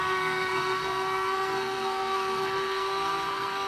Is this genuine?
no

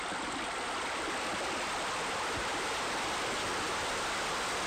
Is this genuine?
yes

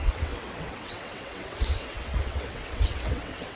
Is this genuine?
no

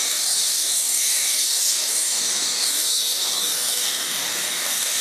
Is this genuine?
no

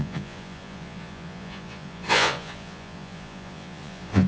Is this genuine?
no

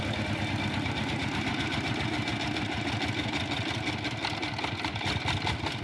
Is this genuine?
yes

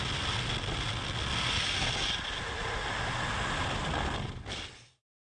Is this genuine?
yes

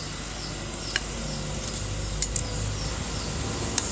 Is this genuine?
yes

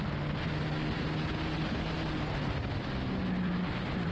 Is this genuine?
yes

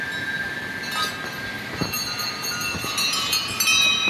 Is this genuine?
yes